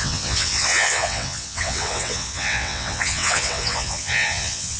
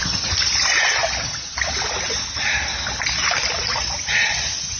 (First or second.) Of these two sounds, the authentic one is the second